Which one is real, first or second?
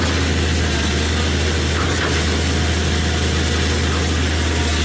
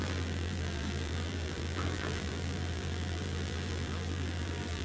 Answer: first